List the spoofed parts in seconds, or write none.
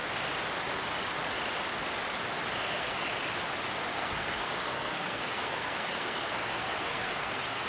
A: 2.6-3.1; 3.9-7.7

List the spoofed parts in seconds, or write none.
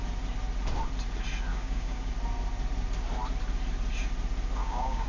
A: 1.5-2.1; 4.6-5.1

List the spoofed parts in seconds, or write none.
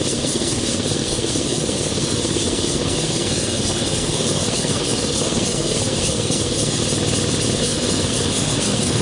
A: 0.0-6.8; 7.6-9.0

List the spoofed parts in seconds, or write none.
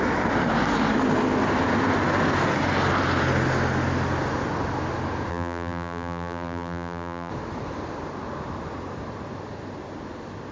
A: 5.3-7.3